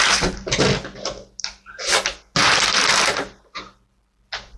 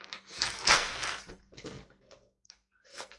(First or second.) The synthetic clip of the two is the second